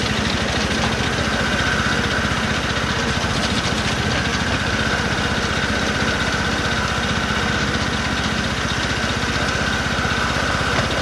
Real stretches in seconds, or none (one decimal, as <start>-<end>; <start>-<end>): 0.0-11.0